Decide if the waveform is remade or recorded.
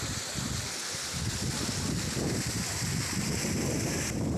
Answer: recorded